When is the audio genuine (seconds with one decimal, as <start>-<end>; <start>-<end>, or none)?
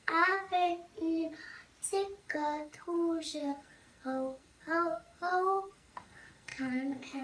0.7-2.2